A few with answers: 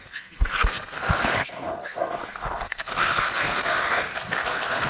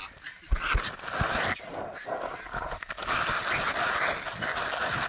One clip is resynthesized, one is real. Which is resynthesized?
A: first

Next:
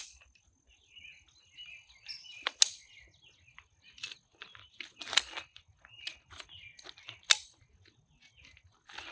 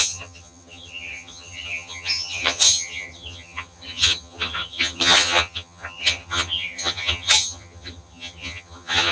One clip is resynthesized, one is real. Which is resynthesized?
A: second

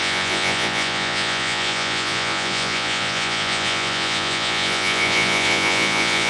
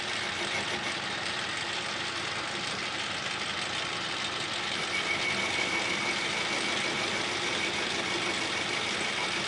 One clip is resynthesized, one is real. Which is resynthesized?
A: first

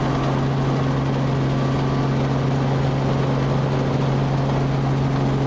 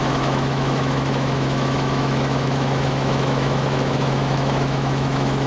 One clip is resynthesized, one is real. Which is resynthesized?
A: second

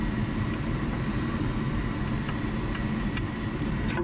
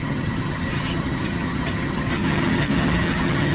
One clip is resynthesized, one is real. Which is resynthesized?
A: second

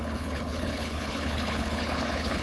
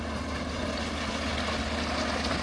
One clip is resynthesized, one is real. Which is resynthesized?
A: first